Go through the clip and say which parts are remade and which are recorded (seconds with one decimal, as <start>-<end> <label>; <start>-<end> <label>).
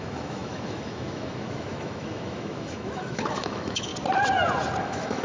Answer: 0.0-3.9 remade; 3.9-4.8 recorded; 4.8-5.2 remade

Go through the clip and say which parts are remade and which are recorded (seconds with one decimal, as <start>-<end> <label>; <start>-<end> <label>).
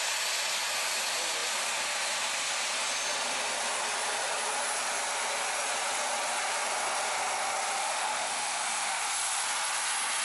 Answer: 0.0-7.8 recorded; 7.8-9.0 remade; 9.0-10.2 recorded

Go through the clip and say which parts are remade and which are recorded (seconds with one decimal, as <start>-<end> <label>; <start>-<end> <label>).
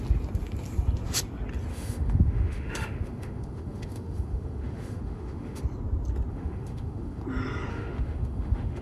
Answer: 0.0-1.7 recorded; 1.7-5.6 remade; 5.6-6.3 recorded; 6.3-7.2 remade; 7.2-7.7 recorded; 7.7-8.8 remade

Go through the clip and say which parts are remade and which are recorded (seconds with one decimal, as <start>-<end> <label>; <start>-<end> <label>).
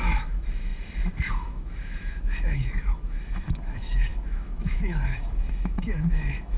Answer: 0.0-6.6 remade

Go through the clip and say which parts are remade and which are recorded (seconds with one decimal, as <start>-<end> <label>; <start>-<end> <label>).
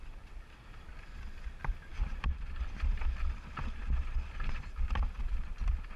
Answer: 0.0-6.0 recorded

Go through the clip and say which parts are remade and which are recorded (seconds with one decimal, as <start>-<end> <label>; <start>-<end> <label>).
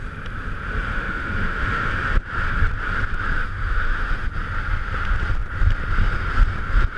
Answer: 0.0-0.9 recorded; 0.9-1.9 remade; 1.9-3.4 recorded; 3.4-4.3 remade; 4.3-7.0 recorded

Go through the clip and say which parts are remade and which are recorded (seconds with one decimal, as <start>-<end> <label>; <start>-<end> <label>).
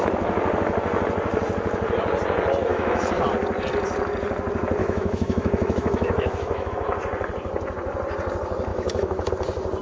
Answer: 0.0-2.7 recorded; 2.7-3.2 remade; 3.2-4.8 recorded; 4.8-6.7 remade; 6.7-8.7 recorded; 8.7-9.3 remade; 9.3-9.8 recorded